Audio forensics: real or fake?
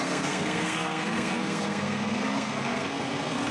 fake